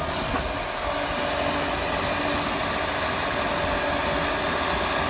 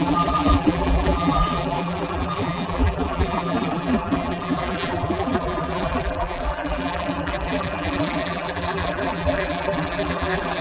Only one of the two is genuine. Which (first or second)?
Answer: first